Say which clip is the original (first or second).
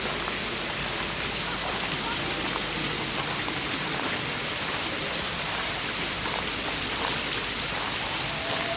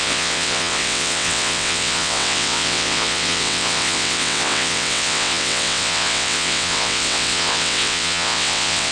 first